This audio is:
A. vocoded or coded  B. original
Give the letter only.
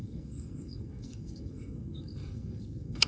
A